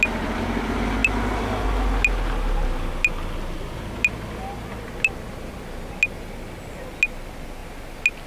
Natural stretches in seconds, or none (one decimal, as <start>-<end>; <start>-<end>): 0.0-8.3